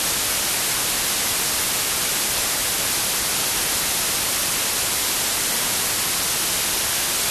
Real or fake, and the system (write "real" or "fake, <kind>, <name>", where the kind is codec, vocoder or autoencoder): real